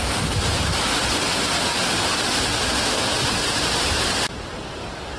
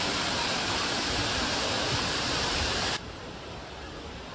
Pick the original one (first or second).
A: first